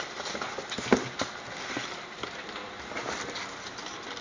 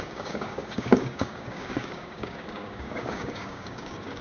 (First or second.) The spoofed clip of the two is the second